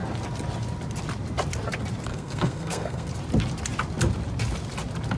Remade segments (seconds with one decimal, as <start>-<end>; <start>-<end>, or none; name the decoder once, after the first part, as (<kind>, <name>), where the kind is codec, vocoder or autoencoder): 2.1-3.1 (codec, SNAC)